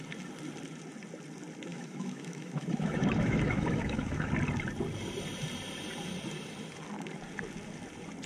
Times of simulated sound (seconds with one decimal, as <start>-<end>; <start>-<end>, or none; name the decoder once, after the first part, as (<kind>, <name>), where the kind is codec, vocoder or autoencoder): 1.7-4.3 (autoencoder, DAC-VAE)